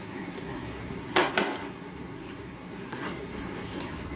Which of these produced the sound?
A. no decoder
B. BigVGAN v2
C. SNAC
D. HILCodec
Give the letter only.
C